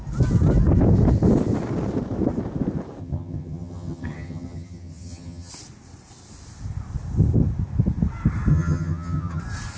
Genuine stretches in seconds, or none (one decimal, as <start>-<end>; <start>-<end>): 0.0-3.0; 5.5-8.5; 9.4-9.8